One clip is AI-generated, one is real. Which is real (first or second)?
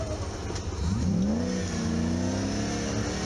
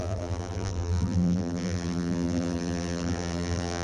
first